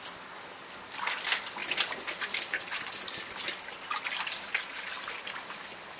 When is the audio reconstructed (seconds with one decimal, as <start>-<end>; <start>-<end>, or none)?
none